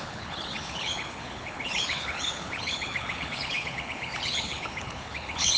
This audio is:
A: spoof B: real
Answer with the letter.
A